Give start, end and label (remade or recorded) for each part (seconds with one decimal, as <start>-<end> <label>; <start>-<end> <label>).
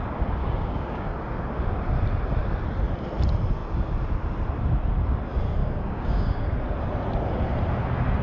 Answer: 0.0-0.4 recorded; 0.4-1.1 remade; 1.1-5.6 recorded; 5.6-6.5 remade; 6.5-8.2 recorded